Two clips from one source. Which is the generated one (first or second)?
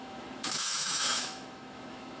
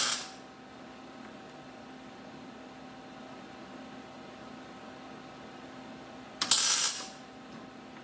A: first